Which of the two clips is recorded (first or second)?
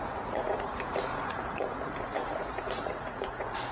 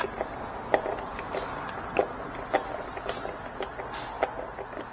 second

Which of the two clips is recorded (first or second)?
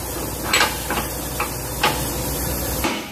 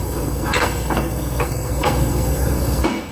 first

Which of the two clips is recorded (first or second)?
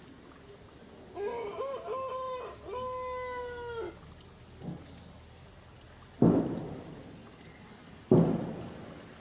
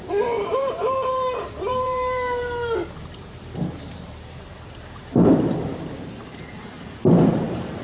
first